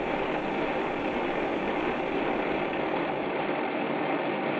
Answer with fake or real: real